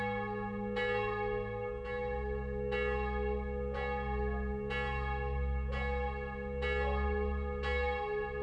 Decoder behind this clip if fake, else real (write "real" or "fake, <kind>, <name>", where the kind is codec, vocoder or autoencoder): real